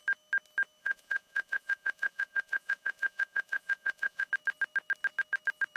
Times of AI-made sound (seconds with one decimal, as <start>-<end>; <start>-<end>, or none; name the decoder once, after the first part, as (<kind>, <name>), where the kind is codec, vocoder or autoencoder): 0.8-4.3 (vocoder, Vocos)